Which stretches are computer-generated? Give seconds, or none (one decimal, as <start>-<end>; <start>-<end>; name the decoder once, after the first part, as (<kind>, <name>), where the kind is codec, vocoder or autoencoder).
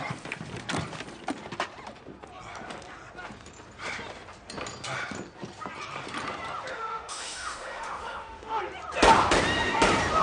6.7-8.6 (autoencoder, DAC-VAE)